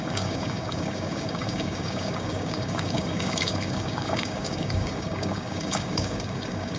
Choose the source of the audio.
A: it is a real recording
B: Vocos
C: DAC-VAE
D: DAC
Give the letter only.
D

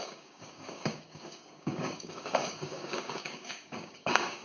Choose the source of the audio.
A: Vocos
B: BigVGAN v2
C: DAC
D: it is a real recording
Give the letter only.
C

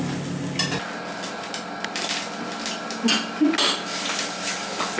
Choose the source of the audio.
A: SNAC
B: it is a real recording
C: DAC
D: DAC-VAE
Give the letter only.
B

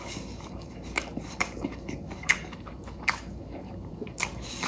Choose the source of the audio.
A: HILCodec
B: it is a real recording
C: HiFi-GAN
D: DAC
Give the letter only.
D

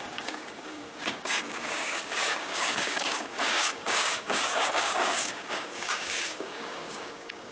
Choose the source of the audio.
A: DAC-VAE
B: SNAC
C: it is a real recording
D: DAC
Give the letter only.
D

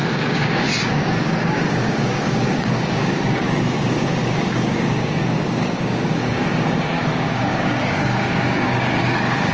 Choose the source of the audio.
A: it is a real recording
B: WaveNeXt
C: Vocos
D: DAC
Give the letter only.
D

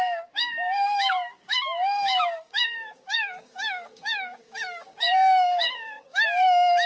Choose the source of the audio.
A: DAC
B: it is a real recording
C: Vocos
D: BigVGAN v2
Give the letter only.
A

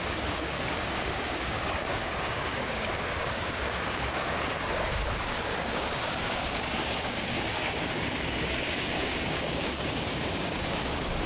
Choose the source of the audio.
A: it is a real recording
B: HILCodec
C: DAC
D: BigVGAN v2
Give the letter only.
C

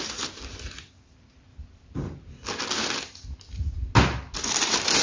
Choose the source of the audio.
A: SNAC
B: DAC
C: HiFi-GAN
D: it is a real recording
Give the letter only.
D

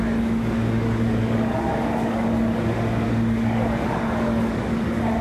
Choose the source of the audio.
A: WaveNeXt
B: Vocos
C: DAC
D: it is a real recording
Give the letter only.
C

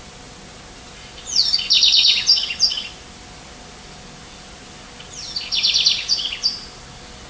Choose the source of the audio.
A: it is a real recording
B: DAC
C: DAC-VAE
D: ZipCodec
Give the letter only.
A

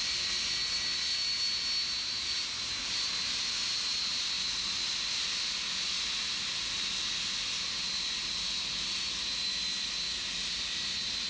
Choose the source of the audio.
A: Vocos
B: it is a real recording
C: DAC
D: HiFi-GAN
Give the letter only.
B